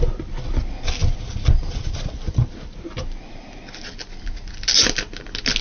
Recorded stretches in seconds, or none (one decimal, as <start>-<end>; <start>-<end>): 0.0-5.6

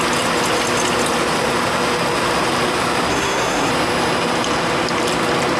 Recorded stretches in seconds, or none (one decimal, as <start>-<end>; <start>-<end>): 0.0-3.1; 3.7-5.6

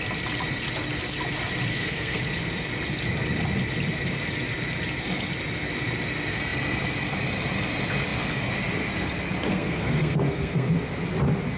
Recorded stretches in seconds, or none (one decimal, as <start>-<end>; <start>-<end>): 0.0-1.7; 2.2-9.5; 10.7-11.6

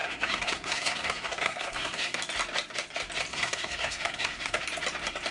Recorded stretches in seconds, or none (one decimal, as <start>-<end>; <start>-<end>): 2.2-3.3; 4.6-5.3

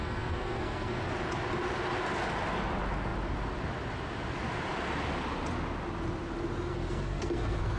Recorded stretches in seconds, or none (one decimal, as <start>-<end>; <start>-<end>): 1.0-6.7

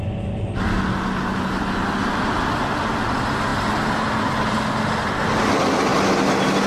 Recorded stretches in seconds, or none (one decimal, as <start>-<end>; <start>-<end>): 0.0-6.7

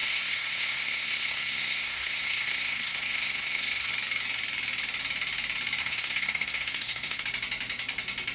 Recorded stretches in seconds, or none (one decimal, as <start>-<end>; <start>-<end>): 3.9-5.8; 7.2-8.3